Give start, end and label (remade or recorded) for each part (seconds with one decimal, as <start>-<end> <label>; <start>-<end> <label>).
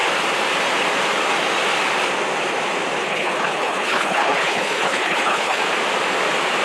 0.0-3.0 recorded; 3.0-5.6 remade; 5.6-6.6 recorded